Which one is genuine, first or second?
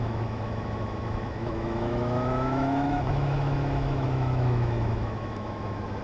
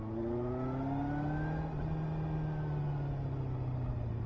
second